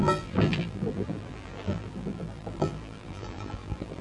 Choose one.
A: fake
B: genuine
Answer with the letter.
A